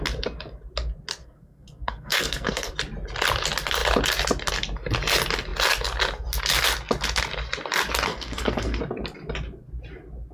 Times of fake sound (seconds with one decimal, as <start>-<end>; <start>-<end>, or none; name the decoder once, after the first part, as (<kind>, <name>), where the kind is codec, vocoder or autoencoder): 1.2-2.7 (codec, SNAC); 8.1-8.8